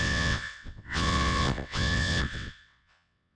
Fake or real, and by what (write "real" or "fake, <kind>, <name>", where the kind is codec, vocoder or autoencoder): fake, vocoder, WaveNeXt